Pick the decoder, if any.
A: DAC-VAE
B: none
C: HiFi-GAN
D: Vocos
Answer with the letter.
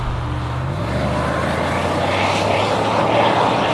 B